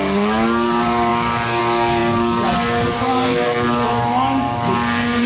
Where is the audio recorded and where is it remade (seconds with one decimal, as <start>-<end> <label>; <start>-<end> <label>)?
0.0-5.3 remade